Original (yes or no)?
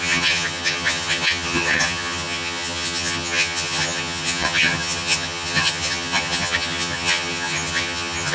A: no